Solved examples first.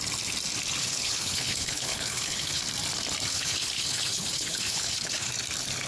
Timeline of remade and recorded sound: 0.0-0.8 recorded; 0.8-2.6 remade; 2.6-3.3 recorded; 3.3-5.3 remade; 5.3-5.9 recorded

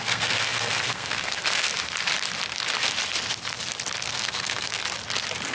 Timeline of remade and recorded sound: 0.0-1.7 remade; 1.7-4.1 recorded; 4.1-4.8 remade; 4.8-5.5 recorded

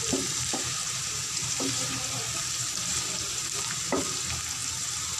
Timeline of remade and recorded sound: 0.0-0.8 recorded; 0.8-3.7 remade; 3.7-4.6 recorded; 4.6-5.2 remade

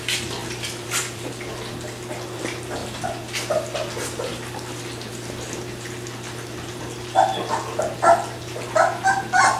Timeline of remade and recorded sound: 0.0-0.4 recorded; 0.4-1.3 remade; 1.3-9.6 recorded